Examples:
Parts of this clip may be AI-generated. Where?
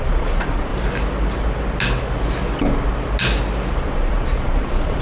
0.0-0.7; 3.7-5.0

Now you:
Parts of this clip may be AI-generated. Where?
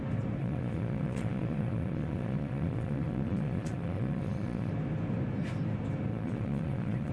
0.4-4.7; 6.1-7.1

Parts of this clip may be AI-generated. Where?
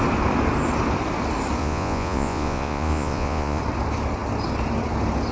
1.6-3.6